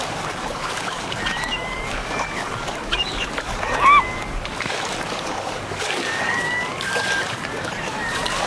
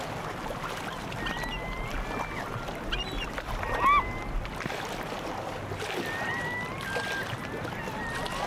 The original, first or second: second